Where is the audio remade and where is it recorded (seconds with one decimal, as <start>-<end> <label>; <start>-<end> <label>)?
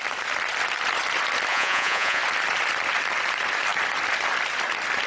0.0-1.5 recorded; 1.5-2.2 remade; 2.2-5.1 recorded